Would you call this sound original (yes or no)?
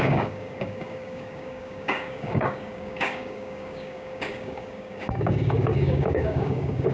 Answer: no